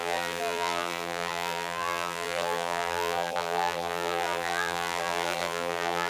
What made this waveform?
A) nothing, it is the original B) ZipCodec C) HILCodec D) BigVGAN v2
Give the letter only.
D